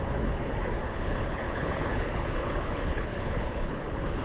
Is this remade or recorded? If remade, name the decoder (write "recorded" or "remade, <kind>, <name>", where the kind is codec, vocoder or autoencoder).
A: remade, codec, HILCodec